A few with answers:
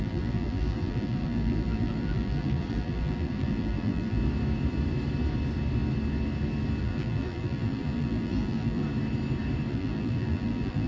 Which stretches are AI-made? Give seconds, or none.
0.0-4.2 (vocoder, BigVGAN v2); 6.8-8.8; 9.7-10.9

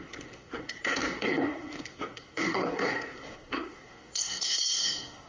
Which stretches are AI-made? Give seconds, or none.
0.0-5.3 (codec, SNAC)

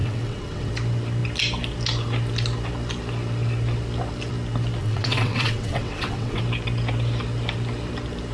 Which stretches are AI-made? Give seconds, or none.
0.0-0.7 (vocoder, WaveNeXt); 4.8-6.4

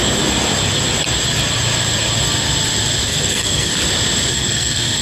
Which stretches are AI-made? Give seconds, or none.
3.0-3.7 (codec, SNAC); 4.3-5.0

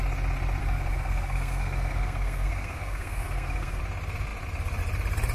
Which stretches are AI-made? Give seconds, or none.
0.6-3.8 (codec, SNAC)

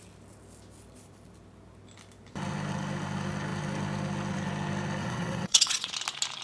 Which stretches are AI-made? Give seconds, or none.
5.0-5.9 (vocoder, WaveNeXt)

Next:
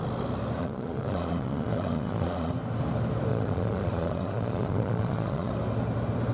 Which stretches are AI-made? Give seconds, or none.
0.6-2.5 (vocoder, Vocos); 3.3-5.5